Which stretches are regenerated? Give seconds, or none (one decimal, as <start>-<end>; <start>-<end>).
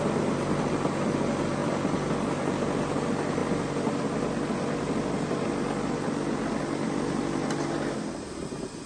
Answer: none